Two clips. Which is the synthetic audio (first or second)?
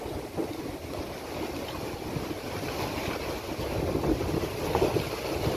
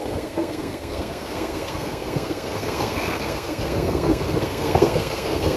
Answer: second